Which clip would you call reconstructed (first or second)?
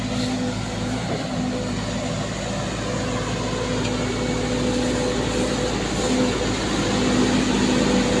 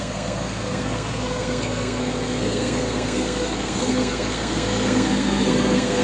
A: second